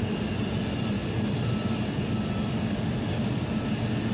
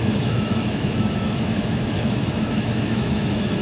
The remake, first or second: second